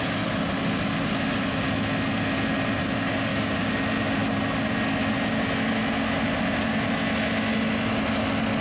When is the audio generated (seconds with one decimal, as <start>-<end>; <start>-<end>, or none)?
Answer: 2.8-3.7